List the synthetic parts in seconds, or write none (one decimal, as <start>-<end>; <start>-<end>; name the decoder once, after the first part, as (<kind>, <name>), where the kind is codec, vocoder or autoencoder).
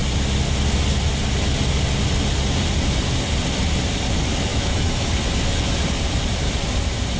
4.5-5.1 (autoencoder, DAC-VAE)